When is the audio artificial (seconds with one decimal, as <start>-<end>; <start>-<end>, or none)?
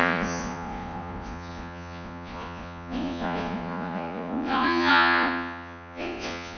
0.0-6.6